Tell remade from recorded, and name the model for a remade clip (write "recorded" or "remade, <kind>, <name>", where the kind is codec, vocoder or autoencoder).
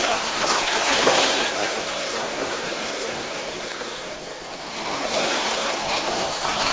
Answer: remade, codec, SNAC